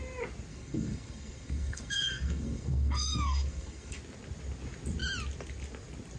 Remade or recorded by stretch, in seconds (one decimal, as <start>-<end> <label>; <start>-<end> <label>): 0.0-0.5 recorded; 0.5-4.0 remade; 4.0-6.2 recorded